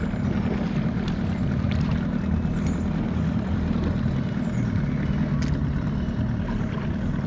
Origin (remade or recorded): recorded